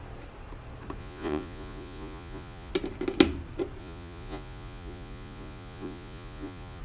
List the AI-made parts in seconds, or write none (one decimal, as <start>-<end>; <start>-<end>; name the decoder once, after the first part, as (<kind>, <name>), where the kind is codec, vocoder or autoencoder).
1.0-2.7 (vocoder, Vocos); 3.8-6.8